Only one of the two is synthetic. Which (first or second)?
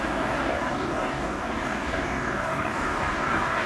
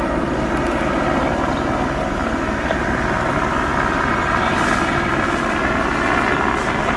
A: first